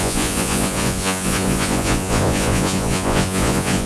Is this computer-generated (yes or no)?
yes